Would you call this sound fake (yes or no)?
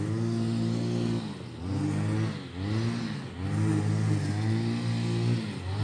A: no